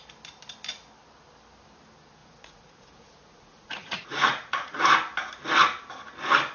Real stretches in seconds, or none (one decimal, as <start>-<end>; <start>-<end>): 0.0-2.2; 4.8-6.5